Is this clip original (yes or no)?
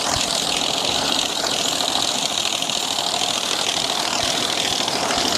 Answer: yes